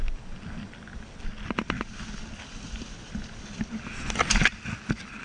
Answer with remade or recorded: recorded